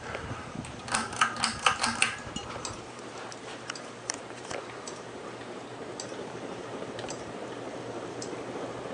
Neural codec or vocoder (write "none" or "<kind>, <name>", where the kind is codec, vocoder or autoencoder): vocoder, BigVGAN v2